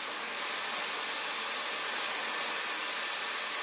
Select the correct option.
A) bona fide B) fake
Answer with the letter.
A